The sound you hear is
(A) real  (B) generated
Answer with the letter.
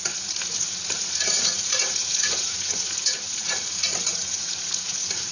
B